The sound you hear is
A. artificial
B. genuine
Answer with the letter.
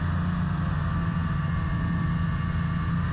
B